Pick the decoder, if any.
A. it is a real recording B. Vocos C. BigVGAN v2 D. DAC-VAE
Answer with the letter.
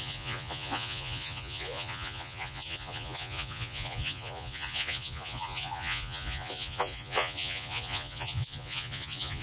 B